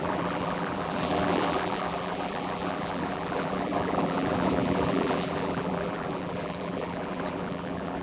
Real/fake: fake